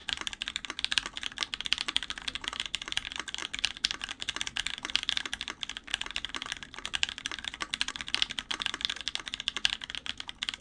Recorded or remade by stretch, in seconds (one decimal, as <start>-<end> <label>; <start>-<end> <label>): 0.0-2.6 remade; 2.6-5.9 recorded; 5.9-7.9 remade; 7.9-10.6 recorded